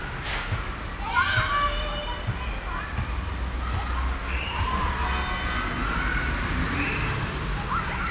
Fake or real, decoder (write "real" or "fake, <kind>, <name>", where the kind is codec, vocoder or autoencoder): real